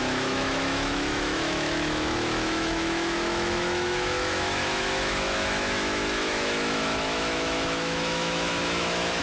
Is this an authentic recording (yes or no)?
no